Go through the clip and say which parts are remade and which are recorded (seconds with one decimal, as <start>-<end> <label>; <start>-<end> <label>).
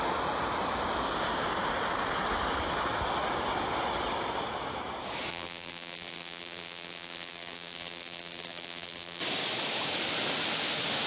0.0-5.3 recorded; 5.3-9.2 remade; 9.2-11.1 recorded